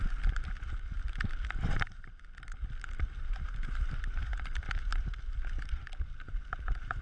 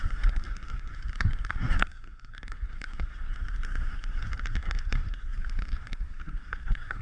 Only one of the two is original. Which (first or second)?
first